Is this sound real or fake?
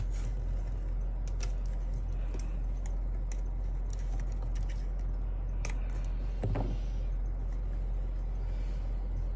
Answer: real